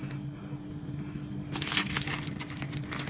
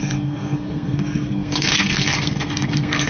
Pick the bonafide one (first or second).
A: first